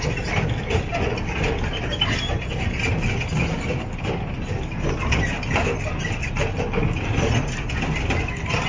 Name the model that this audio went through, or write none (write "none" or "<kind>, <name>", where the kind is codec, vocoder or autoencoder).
none